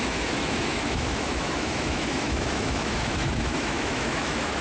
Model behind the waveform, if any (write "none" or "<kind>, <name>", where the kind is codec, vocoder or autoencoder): autoencoder, DAC-VAE